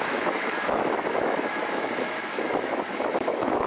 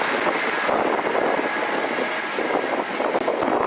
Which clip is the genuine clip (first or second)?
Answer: second